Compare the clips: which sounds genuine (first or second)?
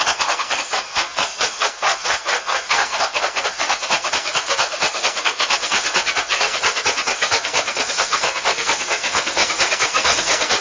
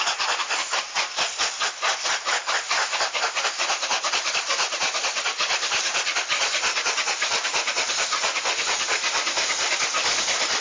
second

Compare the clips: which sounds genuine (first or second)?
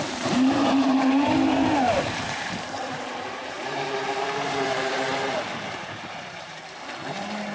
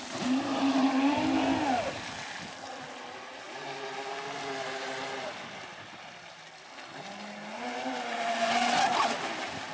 second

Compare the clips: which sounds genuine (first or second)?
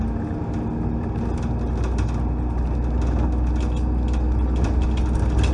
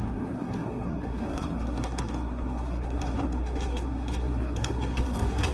first